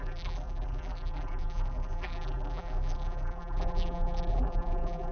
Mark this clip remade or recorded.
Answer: remade